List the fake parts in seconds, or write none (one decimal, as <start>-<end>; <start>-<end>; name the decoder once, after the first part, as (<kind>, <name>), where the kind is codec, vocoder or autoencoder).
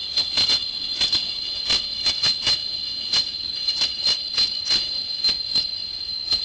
none